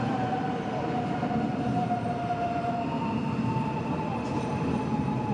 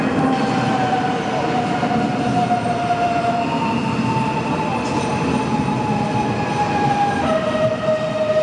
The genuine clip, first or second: second